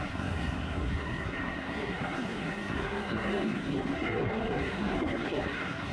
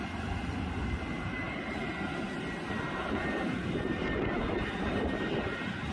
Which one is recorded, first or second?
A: second